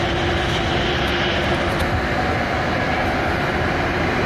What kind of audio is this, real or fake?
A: real